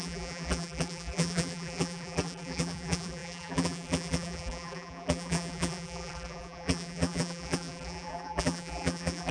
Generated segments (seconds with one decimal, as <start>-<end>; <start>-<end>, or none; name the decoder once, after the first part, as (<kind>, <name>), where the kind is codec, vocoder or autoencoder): 0.0-9.3 (vocoder, BigVGAN v2)